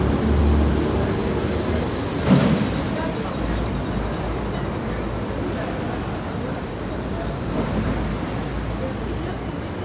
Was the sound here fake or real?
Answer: real